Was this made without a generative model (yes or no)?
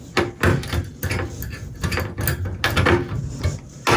yes